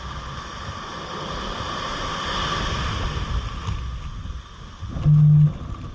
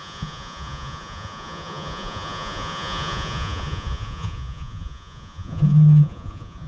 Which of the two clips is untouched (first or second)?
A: first